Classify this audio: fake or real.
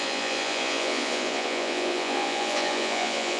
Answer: fake